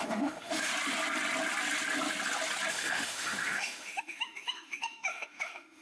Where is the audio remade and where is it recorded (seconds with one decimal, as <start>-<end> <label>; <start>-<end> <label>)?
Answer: 0.0-0.7 remade; 0.7-2.7 recorded; 2.7-5.8 remade